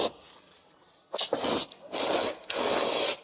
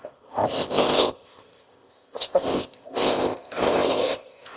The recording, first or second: first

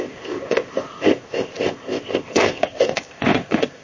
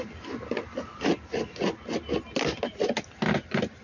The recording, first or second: second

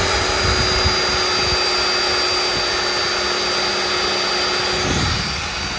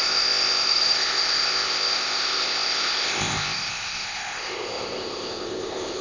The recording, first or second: first